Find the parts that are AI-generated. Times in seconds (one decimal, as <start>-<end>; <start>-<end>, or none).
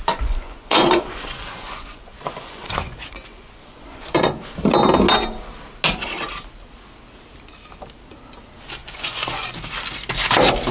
0.0-4.3; 8.8-9.5